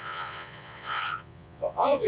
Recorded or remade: remade